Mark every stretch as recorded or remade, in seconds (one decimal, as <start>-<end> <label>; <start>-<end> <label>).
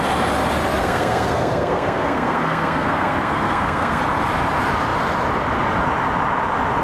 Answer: 0.0-0.8 recorded; 0.8-4.0 remade; 4.0-6.8 recorded